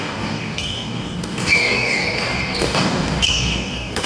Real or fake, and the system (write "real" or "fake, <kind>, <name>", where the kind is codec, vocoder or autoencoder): fake, codec, DAC